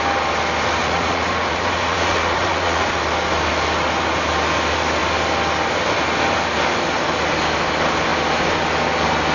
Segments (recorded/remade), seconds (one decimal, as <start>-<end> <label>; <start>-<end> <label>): 0.0-0.8 recorded; 0.8-3.0 remade; 3.0-9.3 recorded